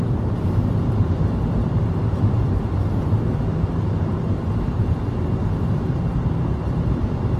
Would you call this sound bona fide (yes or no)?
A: no